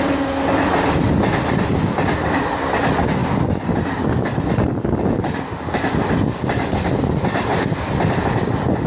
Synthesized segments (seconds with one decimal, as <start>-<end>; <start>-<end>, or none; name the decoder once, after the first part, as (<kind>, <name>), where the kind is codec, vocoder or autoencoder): none